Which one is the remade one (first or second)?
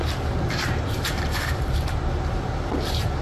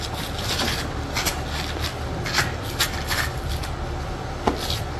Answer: first